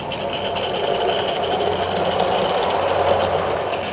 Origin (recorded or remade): recorded